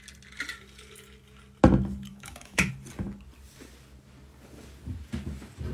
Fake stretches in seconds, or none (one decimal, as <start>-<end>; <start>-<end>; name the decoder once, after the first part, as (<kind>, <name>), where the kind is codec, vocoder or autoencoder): 2.1-2.7 (autoencoder, DAC-VAE)